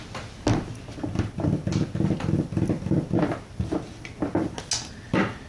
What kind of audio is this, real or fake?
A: real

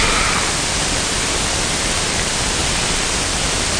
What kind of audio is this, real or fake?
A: real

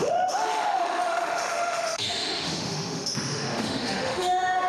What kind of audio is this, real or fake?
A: fake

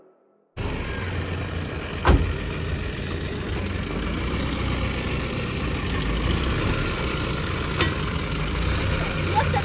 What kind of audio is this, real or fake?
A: real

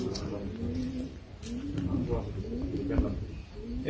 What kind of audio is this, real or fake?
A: real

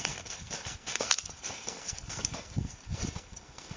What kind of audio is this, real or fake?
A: fake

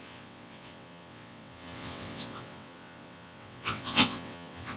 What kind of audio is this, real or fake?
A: fake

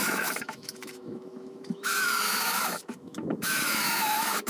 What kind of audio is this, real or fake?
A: fake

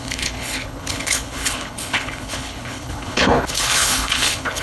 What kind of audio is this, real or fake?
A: fake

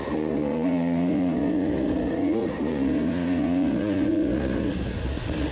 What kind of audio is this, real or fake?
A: fake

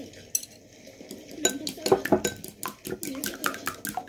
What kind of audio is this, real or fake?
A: real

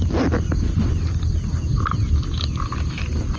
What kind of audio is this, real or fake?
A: real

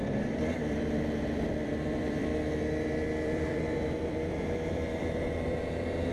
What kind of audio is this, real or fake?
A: fake